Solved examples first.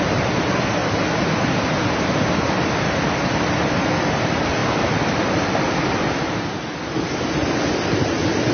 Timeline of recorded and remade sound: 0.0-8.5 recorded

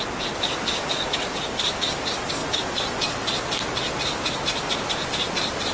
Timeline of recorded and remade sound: 0.0-5.7 recorded

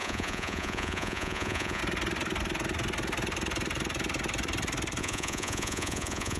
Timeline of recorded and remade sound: 0.0-1.8 remade; 1.8-5.0 recorded; 5.0-6.4 remade

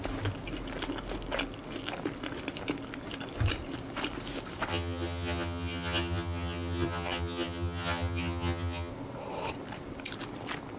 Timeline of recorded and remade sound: 0.0-4.7 recorded; 4.7-8.9 remade; 8.9-10.8 recorded

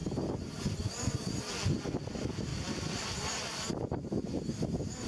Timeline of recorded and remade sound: 0.0-2.5 recorded; 2.5-3.7 remade; 3.7-5.1 recorded

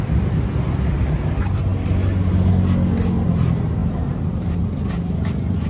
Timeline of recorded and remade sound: 0.0-3.8 recorded; 3.8-4.5 remade; 4.5-5.7 recorded